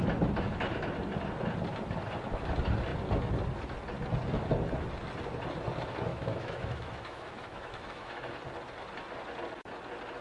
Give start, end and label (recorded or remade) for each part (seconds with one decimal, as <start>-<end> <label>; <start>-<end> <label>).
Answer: 0.0-6.1 recorded; 6.1-8.3 remade; 8.3-10.2 recorded